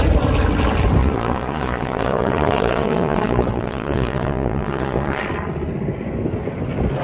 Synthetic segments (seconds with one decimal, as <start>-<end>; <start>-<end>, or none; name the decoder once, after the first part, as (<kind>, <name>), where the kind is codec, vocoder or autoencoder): 1.0-5.2 (vocoder, Vocos)